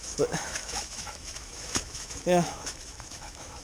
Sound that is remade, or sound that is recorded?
remade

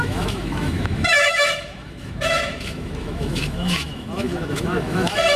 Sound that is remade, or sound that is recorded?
remade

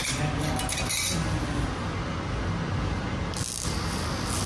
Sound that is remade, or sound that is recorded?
recorded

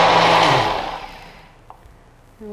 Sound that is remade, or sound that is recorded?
recorded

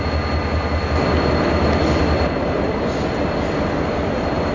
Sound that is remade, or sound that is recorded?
recorded